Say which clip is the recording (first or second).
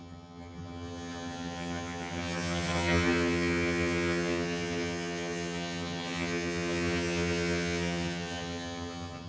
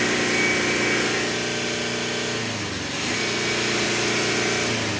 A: second